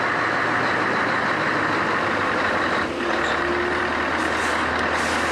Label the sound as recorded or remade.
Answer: recorded